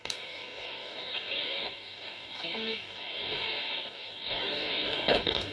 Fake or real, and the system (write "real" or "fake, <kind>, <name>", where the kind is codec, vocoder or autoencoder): fake, codec, DAC